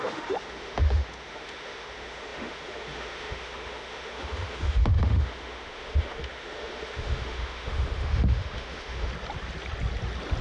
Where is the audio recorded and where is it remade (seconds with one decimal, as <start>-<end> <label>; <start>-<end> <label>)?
0.0-9.1 remade; 9.1-10.4 recorded